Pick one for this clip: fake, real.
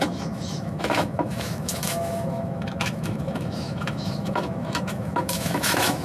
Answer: fake